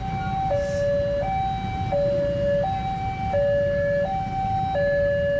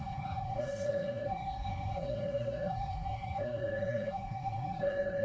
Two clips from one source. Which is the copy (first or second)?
second